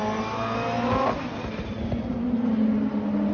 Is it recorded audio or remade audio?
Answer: recorded